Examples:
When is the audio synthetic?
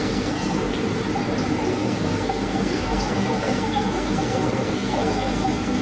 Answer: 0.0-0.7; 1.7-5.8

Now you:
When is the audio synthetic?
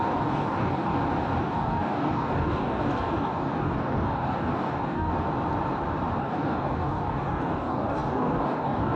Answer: 0.0-0.9; 1.4-5.1; 6.2-9.0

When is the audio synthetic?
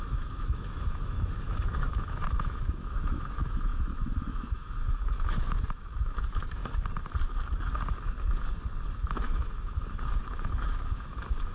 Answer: 0.0-6.6; 9.1-11.5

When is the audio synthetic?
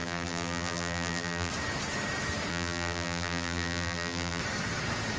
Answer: 0.0-1.5; 2.5-4.4